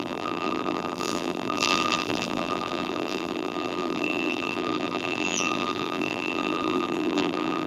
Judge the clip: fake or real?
fake